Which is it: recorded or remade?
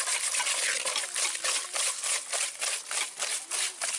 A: recorded